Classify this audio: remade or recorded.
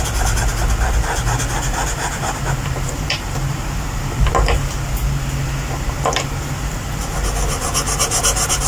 recorded